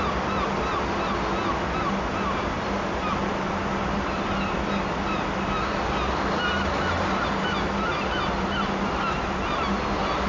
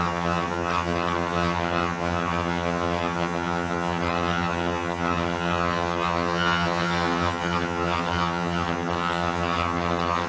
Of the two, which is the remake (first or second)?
second